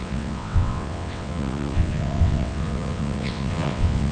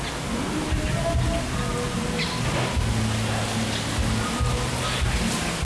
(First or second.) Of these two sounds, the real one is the second